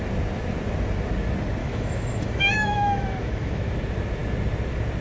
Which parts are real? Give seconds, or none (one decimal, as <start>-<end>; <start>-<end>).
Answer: 0.0-1.6; 3.7-5.0